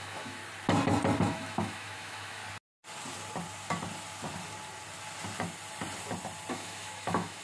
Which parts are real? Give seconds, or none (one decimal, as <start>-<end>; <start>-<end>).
0.4-1.2; 2.4-6.5

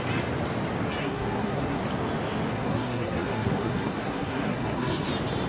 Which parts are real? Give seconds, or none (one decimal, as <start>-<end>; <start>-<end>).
0.0-1.0; 1.8-2.5; 5.1-5.5

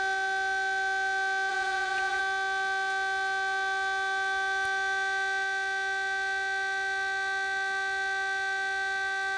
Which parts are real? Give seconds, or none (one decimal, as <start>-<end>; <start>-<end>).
0.0-1.5; 2.2-9.4